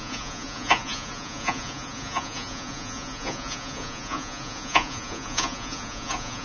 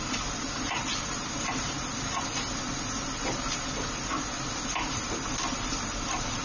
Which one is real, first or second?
second